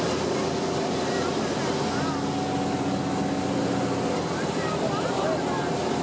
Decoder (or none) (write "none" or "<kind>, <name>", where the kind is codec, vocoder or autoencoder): none